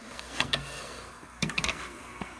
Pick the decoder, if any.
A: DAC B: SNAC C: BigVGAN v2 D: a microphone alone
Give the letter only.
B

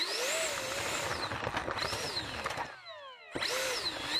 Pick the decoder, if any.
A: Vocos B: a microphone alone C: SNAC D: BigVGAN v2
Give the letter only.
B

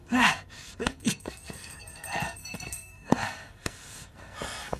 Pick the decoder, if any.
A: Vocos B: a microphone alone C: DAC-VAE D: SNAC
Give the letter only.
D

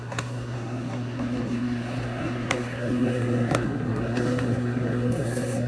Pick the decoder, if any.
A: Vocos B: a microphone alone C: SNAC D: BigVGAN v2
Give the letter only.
C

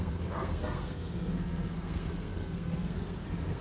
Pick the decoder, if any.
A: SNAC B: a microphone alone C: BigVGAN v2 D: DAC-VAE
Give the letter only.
A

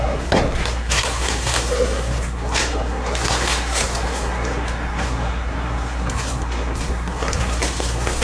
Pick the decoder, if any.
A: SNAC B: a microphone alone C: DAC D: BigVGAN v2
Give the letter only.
A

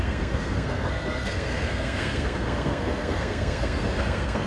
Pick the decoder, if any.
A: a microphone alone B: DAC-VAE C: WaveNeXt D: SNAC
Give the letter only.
D